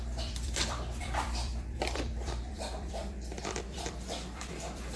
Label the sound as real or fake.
fake